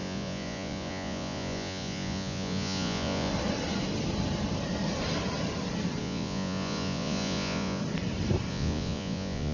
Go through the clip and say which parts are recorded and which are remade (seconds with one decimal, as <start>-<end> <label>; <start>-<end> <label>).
0.0-3.3 remade; 3.3-6.0 recorded; 6.0-7.8 remade; 7.8-8.5 recorded; 8.5-9.5 remade